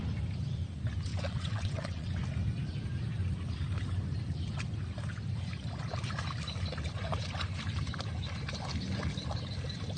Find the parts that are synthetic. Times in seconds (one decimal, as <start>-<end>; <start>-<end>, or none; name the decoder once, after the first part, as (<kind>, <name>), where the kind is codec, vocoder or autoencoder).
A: 1.1-2.1 (vocoder, WaveNeXt)